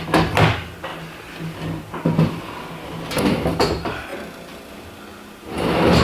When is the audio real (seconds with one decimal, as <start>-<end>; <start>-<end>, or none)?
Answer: 0.0-6.0